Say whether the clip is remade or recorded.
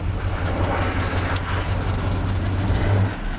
recorded